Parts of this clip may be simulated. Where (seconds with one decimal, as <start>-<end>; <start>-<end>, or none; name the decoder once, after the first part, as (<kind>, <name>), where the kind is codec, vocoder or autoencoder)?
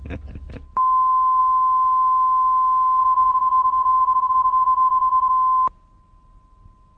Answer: 3.0-5.3 (vocoder, WaveNeXt)